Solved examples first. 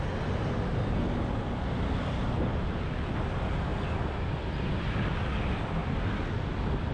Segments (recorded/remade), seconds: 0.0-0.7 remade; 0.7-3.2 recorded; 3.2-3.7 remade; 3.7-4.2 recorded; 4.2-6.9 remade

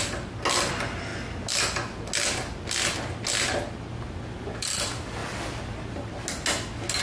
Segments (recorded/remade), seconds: 0.0-7.0 recorded

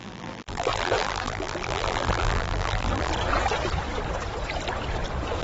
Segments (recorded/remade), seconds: 0.0-3.1 remade; 3.1-5.4 recorded

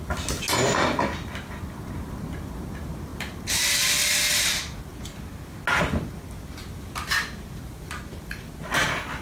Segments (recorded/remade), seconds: 0.0-9.2 recorded

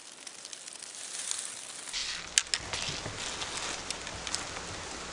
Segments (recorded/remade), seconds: 0.0-5.1 recorded

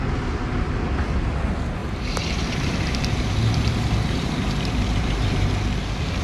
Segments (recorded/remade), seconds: 0.0-1.8 recorded; 1.8-5.5 remade; 5.5-6.2 recorded

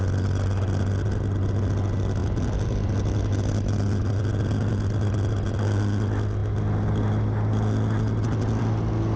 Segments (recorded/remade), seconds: 0.0-9.2 recorded